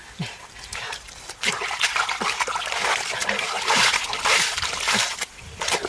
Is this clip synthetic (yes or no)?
no